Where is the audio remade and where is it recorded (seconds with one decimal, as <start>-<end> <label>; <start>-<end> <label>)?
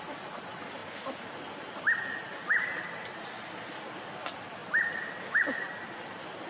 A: 0.0-6.5 recorded